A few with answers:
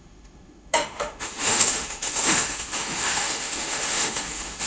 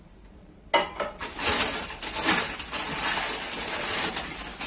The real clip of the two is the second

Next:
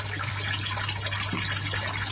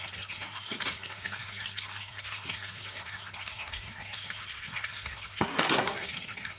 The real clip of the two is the first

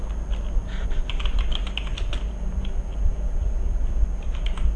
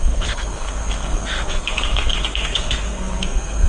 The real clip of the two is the first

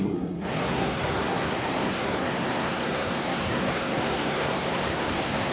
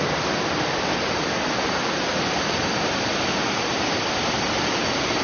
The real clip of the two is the second